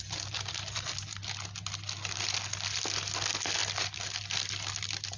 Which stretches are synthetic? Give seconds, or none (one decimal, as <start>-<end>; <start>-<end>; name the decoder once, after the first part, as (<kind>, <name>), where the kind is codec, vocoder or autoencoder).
none